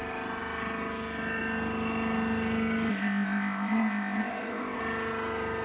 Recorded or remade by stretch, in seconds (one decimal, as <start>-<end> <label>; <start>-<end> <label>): 0.0-2.9 recorded; 2.9-4.8 remade; 4.8-5.6 recorded